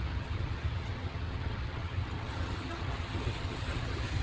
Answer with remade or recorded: remade